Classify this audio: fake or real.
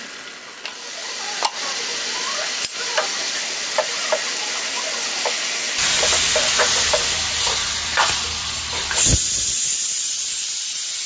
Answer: real